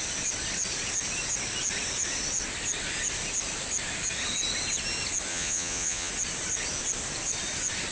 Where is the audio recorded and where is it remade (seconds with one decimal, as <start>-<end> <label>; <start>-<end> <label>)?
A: 0.0-5.3 recorded; 5.3-6.1 remade; 6.1-7.9 recorded